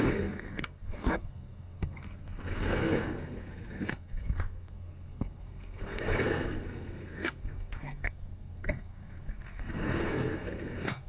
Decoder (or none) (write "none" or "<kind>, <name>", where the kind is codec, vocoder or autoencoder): codec, SNAC